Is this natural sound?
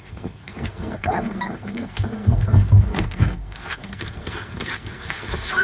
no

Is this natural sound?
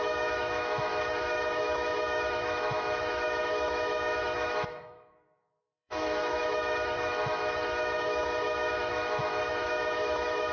no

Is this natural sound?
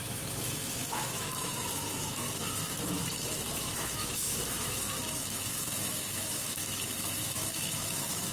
no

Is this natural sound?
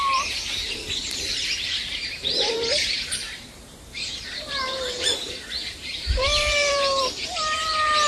no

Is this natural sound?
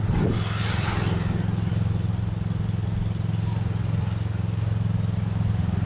yes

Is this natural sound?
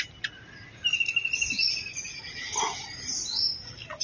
yes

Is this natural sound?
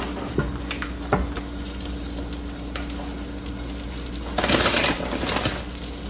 yes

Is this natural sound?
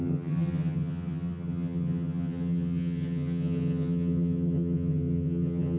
no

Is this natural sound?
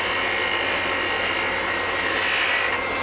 yes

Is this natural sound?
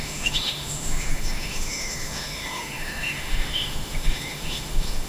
no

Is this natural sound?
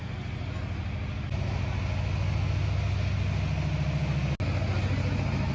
yes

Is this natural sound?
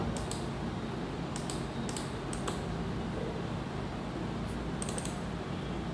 yes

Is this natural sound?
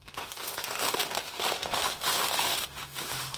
no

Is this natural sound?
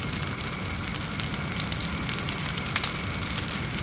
yes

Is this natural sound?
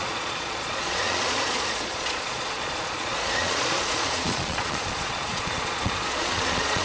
no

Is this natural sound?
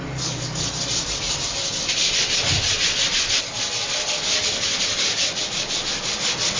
yes